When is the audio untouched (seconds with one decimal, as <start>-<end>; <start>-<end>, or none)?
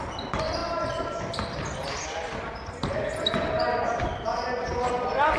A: 0.0-5.4